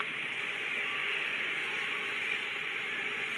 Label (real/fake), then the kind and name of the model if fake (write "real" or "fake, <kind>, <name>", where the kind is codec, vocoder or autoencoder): fake, vocoder, Vocos